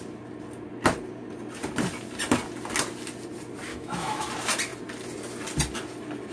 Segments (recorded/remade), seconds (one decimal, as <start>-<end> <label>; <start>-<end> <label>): 0.0-3.7 recorded; 3.7-4.3 remade; 4.3-6.3 recorded